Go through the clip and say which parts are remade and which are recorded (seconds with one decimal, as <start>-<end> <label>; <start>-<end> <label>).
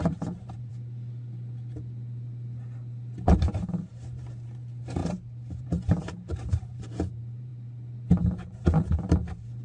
0.0-0.7 remade; 0.7-3.3 recorded; 3.3-7.5 remade; 7.5-9.1 recorded; 9.1-9.6 remade